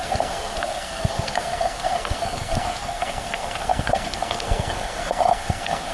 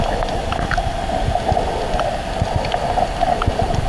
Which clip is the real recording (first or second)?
second